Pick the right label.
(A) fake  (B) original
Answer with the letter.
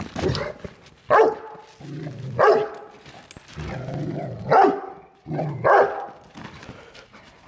B